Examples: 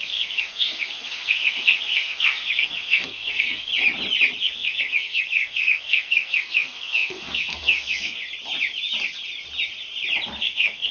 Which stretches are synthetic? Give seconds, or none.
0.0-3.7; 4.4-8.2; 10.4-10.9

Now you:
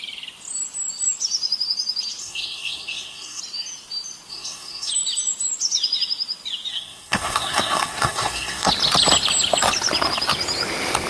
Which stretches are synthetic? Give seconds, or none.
2.2-3.4; 4.3-4.9; 6.7-8.7

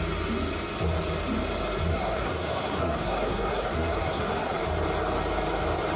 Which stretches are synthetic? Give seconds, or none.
1.9-4.6

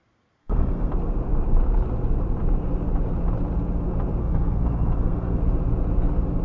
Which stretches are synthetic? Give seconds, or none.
0.4-0.9; 4.2-5.4

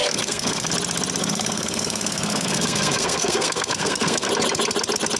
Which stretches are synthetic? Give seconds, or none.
0.0-0.7; 1.2-4.3

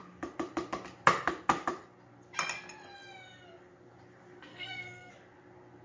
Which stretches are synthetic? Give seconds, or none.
4.5-5.1